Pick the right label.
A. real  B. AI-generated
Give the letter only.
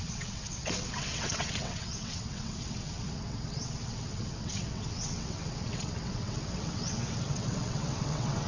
B